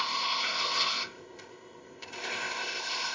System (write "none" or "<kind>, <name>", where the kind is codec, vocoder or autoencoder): codec, ZipCodec